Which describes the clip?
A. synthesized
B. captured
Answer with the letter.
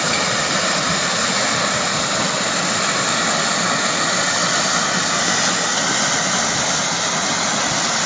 B